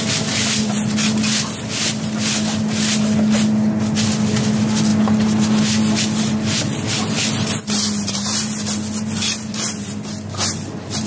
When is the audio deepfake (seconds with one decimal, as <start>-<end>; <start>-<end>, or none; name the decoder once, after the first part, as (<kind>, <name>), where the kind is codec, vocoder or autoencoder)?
none